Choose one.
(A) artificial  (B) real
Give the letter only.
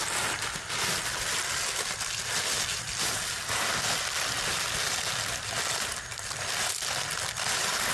B